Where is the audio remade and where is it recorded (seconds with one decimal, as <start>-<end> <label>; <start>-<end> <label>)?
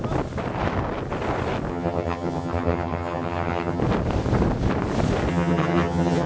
0.0-1.7 recorded; 1.7-3.8 remade; 3.8-5.3 recorded; 5.3-6.3 remade